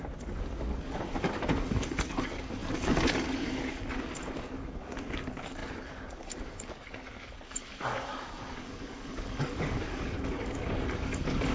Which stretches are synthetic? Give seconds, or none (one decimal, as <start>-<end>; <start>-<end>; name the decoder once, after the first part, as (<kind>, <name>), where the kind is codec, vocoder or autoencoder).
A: 0.0-11.5 (codec, DAC)

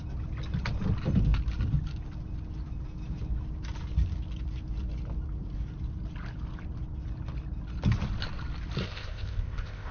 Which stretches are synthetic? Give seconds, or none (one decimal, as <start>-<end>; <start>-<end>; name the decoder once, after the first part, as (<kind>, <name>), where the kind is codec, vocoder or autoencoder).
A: 8.8-9.9 (codec, ZipCodec)